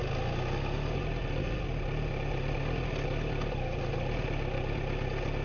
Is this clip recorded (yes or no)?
yes